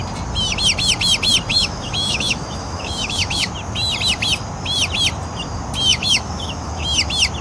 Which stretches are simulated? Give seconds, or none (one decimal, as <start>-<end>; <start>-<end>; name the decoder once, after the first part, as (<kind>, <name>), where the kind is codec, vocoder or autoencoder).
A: 1.5-3.5 (autoencoder, DAC-VAE); 5.9-6.8